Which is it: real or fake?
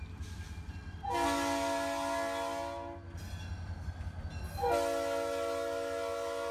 real